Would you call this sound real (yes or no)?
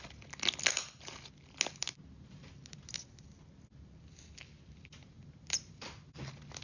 yes